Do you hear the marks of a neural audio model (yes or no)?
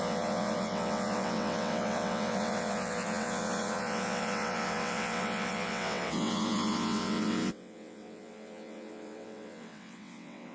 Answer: yes